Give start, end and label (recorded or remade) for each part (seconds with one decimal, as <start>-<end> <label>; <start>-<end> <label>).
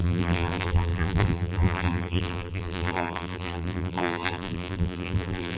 0.0-5.6 remade